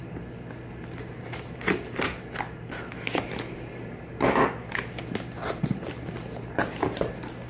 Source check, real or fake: real